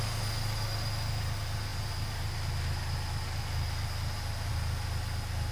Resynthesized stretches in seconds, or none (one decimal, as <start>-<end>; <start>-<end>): none